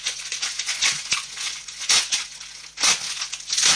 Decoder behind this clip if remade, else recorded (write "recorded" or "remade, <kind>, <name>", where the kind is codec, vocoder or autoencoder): remade, vocoder, Vocos